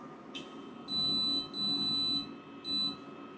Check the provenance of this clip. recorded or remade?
recorded